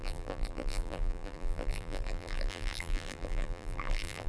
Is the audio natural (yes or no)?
no